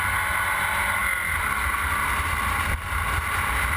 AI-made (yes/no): no